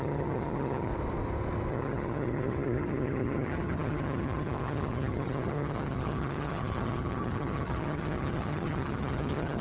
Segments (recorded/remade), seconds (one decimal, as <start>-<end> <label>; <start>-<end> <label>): 0.0-0.9 remade; 0.9-1.7 recorded; 1.7-9.6 remade